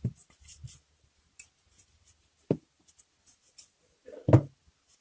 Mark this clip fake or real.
real